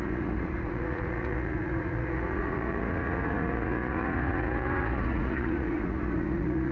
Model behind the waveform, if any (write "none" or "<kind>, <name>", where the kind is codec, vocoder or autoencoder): vocoder, Vocos